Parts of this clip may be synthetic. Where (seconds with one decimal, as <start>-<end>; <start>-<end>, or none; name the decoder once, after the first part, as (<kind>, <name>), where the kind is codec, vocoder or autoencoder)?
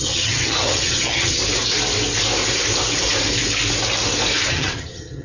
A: 0.0-1.4 (vocoder, HiFi-GAN); 4.5-5.2